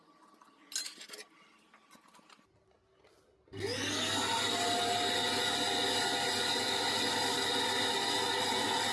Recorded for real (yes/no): yes